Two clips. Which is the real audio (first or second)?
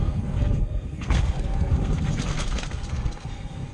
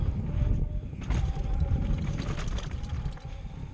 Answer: second